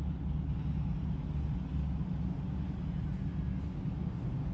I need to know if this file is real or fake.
real